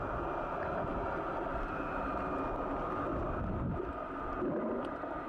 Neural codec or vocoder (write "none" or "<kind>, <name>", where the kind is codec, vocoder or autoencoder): none